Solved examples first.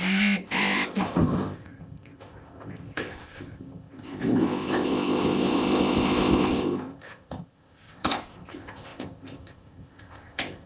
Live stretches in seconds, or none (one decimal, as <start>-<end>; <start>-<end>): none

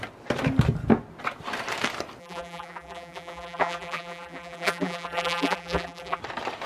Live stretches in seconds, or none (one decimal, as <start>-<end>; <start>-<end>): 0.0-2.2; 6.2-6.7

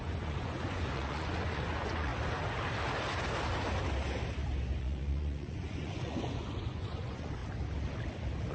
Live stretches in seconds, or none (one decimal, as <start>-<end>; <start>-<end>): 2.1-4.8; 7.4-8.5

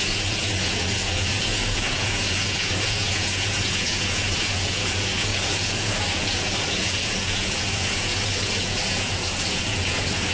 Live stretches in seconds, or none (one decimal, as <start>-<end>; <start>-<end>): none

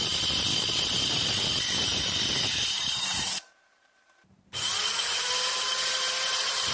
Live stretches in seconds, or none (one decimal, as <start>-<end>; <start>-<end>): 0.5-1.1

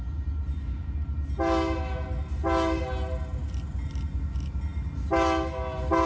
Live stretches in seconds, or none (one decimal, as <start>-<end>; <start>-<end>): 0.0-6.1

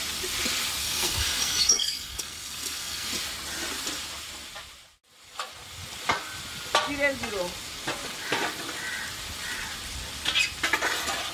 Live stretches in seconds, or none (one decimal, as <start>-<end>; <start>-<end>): 0.0-0.8; 3.1-11.3